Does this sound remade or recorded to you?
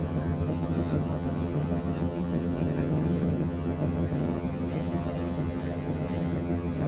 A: remade